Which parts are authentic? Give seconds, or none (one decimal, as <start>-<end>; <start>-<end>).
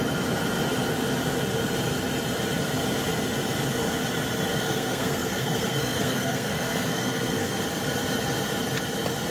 0.0-4.5; 7.6-9.3